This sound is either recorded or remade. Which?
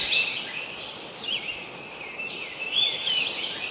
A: recorded